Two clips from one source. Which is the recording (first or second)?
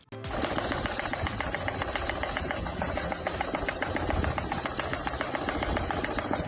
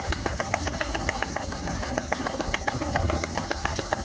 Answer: first